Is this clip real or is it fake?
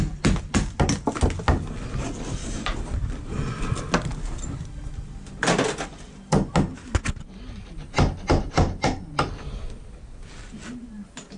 real